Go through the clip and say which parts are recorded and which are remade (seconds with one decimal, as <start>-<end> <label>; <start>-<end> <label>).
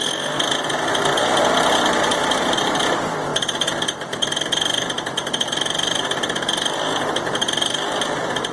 0.0-8.5 recorded